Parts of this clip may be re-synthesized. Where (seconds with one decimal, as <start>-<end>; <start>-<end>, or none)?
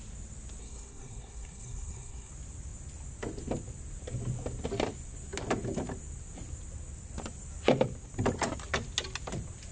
0.6-2.3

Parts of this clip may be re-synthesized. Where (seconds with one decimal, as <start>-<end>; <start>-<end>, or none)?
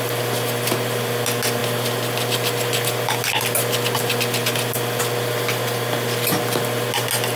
none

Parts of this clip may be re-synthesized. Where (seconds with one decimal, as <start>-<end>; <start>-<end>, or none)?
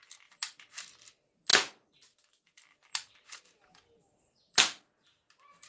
none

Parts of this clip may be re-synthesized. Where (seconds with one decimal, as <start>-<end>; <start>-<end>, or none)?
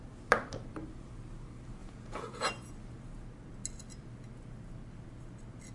1.8-2.5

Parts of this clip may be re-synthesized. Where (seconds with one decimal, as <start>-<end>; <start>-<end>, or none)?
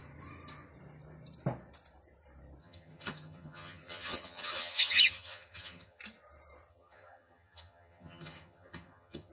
2.6-6.0; 6.7-9.3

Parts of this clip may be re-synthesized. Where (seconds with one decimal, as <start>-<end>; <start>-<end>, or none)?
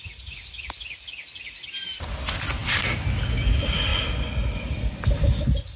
2.6-3.1